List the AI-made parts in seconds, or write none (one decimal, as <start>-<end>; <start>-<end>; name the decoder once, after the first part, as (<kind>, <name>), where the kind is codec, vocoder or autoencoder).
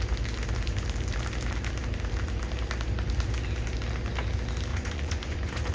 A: 4.7-5.7 (vocoder, Vocos)